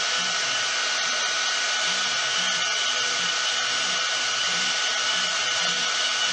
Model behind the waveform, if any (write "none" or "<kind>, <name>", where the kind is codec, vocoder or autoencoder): none